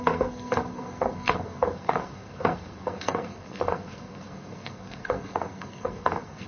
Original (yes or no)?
no